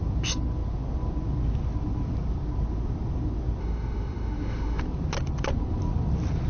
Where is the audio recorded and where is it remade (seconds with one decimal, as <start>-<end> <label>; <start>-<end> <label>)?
0.0-3.6 recorded; 3.6-4.8 remade; 4.8-6.5 recorded